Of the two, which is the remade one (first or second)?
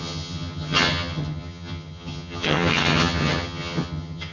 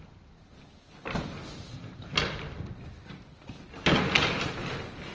first